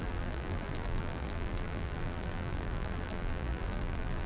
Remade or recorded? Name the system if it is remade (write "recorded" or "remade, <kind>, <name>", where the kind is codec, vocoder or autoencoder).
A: remade, vocoder, BigVGAN v2